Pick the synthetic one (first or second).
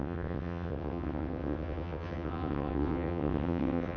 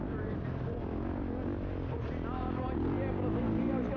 first